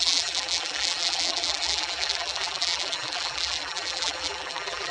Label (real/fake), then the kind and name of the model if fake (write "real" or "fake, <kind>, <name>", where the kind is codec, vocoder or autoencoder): fake, vocoder, BigVGAN v2